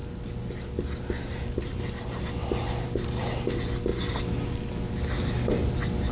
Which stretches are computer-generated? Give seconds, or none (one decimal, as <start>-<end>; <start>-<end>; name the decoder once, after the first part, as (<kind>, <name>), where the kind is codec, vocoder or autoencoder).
0.0-0.5 (vocoder, BigVGAN v2)